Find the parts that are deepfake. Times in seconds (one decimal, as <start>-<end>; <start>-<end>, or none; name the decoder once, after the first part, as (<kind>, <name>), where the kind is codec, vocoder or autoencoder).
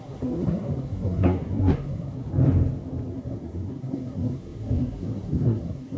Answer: 0.0-2.3 (codec, SNAC); 3.1-6.0